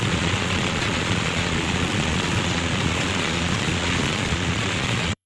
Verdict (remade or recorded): remade